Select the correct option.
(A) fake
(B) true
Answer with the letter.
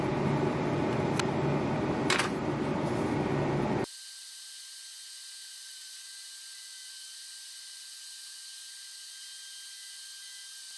B